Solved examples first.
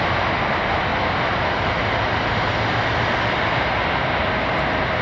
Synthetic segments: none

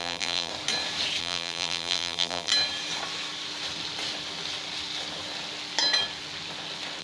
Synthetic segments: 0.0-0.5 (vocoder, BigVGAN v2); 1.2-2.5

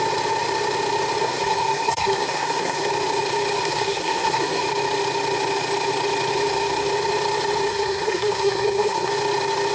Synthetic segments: 1.2-2.9 (codec, SNAC); 3.6-4.6; 7.7-9.1

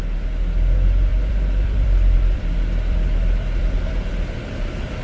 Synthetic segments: 1.1-4.1 (vocoder, BigVGAN v2)

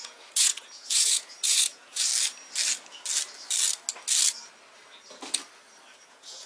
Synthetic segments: 0.0-2.1 (vocoder, Vocos); 6.0-6.5

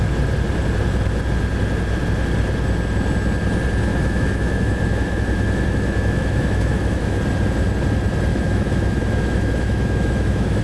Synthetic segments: 3.9-7.2 (autoencoder, DAC-VAE); 8.3-10.6

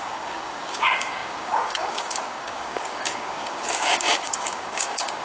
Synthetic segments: 0.0-5.2 (codec, DAC)